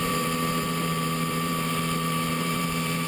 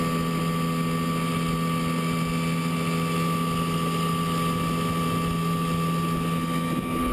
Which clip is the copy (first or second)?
first